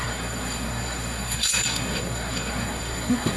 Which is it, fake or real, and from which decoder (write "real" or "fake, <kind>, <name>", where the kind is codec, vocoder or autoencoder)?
fake, codec, SNAC